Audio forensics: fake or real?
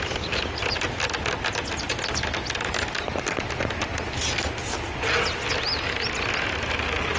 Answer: real